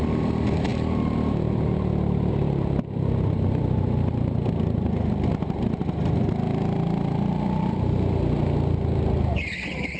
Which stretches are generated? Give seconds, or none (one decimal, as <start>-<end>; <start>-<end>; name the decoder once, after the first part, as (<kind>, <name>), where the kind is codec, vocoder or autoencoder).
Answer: none